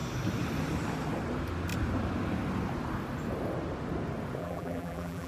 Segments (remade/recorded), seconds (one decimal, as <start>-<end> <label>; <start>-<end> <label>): 0.0-4.4 recorded; 4.4-5.3 remade